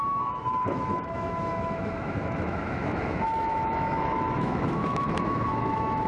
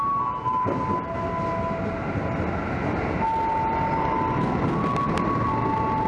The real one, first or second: second